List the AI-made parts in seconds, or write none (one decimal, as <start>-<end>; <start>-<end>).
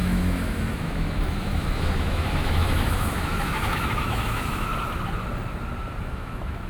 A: 0.0-4.7; 6.0-6.7